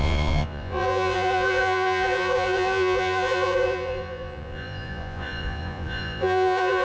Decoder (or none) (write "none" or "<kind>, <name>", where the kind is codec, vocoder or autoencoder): vocoder, Vocos